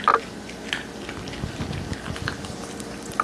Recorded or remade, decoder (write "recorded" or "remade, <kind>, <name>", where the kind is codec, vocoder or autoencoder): recorded